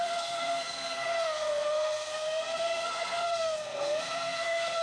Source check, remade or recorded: remade